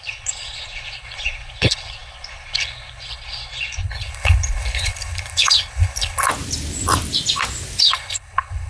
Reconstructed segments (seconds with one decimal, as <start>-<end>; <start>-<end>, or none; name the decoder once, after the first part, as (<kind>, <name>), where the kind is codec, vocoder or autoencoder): 0.0-6.3 (codec, HILCodec); 7.8-8.7